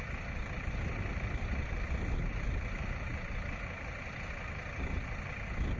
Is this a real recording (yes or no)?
yes